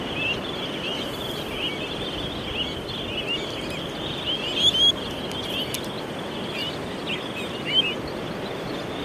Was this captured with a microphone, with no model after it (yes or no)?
yes